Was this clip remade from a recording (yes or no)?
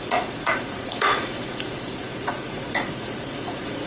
yes